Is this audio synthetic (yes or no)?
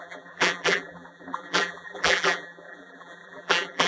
yes